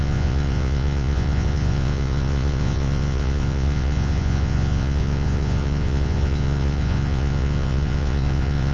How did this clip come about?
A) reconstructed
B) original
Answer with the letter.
A